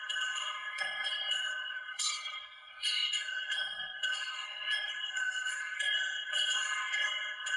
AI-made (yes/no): yes